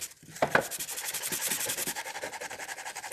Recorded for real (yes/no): yes